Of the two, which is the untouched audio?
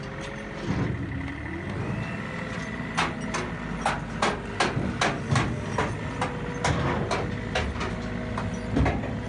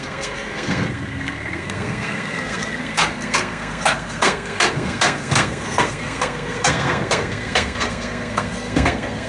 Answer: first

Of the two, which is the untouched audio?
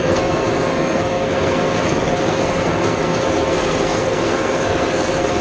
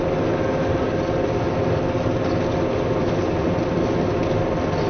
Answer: second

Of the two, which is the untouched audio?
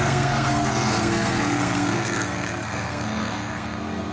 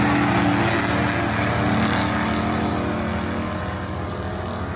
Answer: second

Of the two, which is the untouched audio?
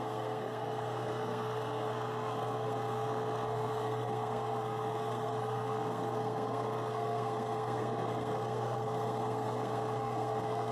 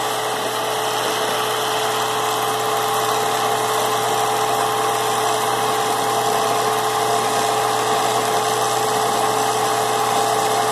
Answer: second